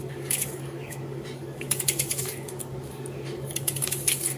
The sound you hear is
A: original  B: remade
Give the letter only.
B